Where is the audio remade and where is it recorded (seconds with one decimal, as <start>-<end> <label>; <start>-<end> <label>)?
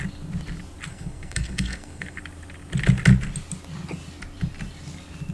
0.0-0.9 recorded; 0.9-2.2 remade; 2.2-5.3 recorded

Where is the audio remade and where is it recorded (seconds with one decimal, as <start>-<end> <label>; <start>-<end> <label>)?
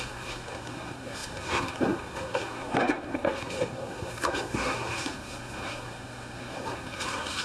0.0-7.4 remade